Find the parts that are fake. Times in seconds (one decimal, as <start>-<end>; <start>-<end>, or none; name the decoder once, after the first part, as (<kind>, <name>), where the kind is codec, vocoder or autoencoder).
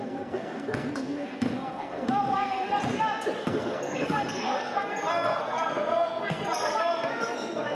0.0-2.7 (codec, SNAC); 3.4-7.7